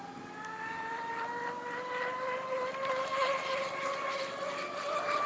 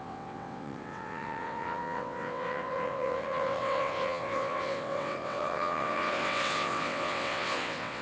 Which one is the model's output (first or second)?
second